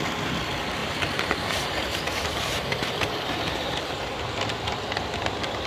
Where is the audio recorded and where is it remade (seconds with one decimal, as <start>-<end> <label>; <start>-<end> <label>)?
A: 0.0-0.8 recorded; 0.8-4.2 remade; 4.2-5.7 recorded